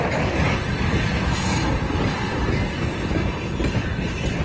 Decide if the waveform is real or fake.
real